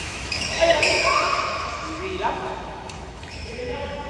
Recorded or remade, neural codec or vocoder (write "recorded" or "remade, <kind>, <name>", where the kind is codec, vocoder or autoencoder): remade, autoencoder, DAC-VAE